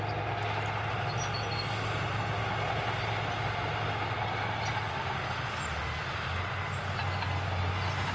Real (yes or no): yes